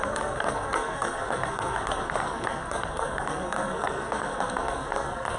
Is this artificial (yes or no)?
yes